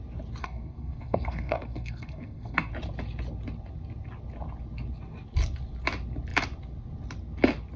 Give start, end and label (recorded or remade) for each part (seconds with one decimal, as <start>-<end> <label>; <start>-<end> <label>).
0.0-0.4 recorded; 0.4-2.7 remade; 2.7-7.8 recorded